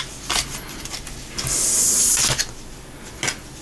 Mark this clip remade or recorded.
recorded